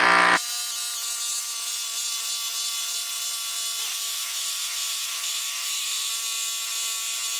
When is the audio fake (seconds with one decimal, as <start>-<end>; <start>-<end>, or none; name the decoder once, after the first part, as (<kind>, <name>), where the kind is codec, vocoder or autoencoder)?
3.9-6.1 (autoencoder, DAC-VAE)